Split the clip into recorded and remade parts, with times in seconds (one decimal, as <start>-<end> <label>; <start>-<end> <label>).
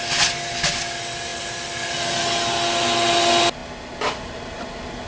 0.0-5.1 recorded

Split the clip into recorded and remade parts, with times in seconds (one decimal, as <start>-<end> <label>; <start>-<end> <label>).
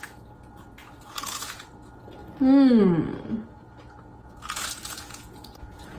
0.0-2.2 remade; 2.2-4.0 recorded; 4.0-6.0 remade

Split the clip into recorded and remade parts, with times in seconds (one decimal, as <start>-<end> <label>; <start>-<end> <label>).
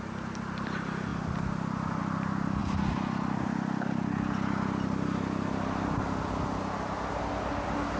0.0-8.0 recorded